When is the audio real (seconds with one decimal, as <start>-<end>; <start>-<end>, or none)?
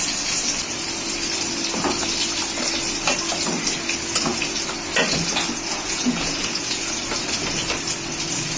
0.0-5.7; 6.8-8.6